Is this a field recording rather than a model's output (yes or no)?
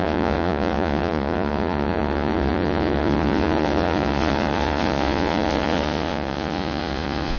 no